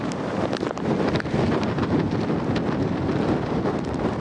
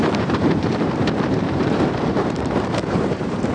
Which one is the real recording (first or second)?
first